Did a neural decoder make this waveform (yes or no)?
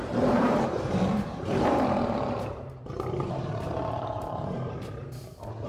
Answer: yes